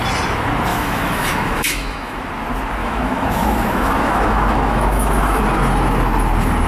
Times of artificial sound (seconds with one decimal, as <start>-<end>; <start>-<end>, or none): 0.7-2.2; 2.8-5.4